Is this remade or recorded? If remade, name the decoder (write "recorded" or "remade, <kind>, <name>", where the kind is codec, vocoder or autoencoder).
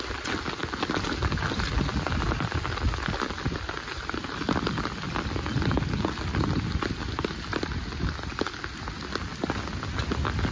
recorded